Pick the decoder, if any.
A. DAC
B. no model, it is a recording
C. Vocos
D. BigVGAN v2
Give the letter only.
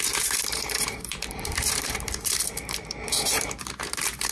D